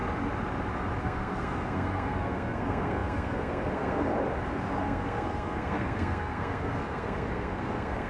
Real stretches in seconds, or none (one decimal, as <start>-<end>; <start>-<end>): 0.0-1.0; 4.1-4.8